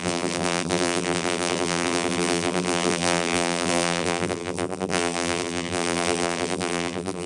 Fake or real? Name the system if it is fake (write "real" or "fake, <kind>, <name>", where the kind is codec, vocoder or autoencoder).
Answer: fake, vocoder, BigVGAN v2